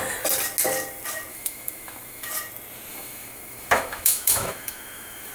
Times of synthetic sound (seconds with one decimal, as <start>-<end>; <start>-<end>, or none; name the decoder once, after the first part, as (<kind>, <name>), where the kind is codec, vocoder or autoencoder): 1.3-2.3 (autoencoder, DAC-VAE); 2.9-5.3